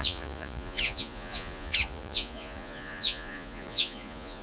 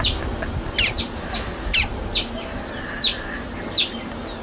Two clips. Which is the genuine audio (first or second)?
second